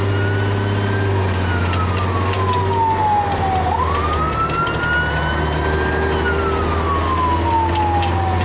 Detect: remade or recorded recorded